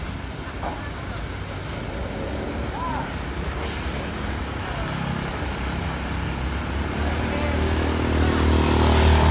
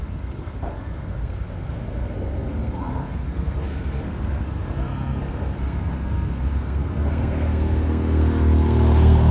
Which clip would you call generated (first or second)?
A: second